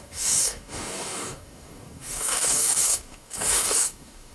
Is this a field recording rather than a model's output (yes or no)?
no